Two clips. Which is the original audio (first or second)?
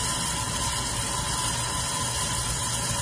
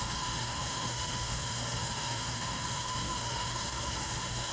first